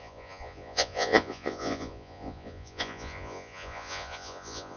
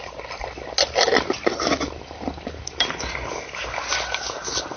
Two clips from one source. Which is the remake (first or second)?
first